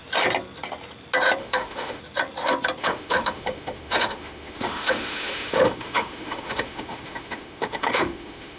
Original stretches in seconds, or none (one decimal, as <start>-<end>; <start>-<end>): 0.0-1.4; 2.0-2.8

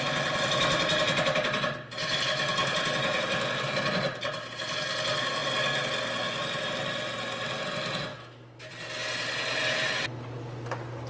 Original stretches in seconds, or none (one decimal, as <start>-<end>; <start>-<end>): 0.0-8.1; 8.7-11.1

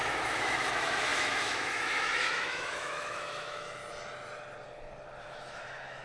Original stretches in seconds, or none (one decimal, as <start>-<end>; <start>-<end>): 3.8-5.2